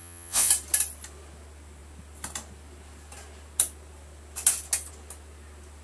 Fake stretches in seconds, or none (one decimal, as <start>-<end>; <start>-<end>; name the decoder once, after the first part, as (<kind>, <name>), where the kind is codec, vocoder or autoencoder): 0.0-0.5 (vocoder, Vocos)